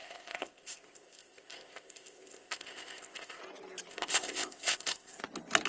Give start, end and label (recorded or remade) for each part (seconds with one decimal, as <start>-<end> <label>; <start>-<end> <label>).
0.0-3.4 remade; 3.4-3.9 recorded; 3.9-5.2 remade; 5.2-5.7 recorded